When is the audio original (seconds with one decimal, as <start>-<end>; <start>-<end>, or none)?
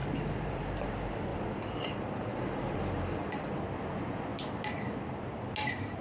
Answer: 0.6-1.3; 3.5-6.0